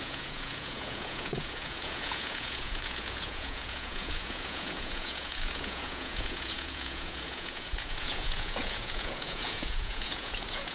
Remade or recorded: remade